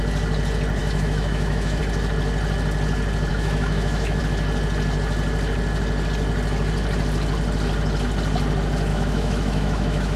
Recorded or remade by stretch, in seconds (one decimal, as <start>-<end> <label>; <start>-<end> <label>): 0.0-0.8 recorded; 0.8-1.8 remade; 1.8-3.3 recorded; 3.3-4.2 remade; 4.2-8.9 recorded; 8.9-10.2 remade